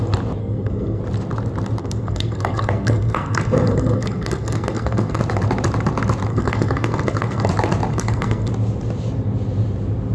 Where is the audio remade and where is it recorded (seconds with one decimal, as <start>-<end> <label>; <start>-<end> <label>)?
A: 0.0-0.4 recorded; 0.4-1.0 remade; 1.0-1.8 recorded; 1.8-5.2 remade; 5.2-6.3 recorded; 6.3-7.5 remade; 7.5-7.9 recorded; 7.9-8.5 remade; 8.5-10.1 recorded